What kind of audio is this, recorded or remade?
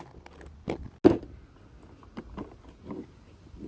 recorded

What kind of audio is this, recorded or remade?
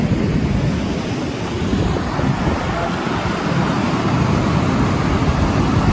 recorded